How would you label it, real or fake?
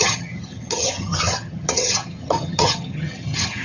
fake